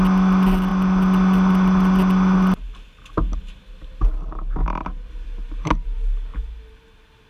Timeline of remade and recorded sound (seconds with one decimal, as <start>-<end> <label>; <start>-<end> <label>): 0.0-7.3 recorded